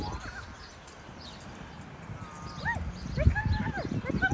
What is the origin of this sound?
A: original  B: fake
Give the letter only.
A